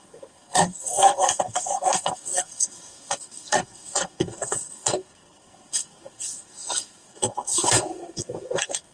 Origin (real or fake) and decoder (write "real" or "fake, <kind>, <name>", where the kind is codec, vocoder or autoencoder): fake, codec, SNAC